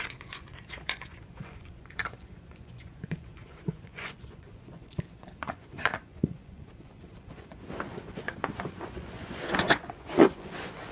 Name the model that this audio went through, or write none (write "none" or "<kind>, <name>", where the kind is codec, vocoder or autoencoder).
vocoder, Vocos